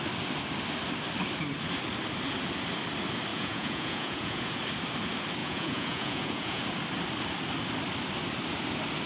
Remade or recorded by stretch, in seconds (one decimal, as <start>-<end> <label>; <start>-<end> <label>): 0.0-3.3 recorded; 3.3-4.6 remade; 4.6-5.4 recorded; 5.4-6.6 remade; 6.6-9.1 recorded